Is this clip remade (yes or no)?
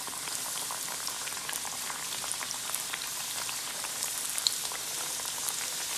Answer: yes